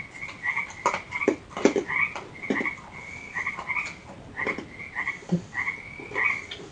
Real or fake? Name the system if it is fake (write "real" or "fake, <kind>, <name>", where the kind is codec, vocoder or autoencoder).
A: real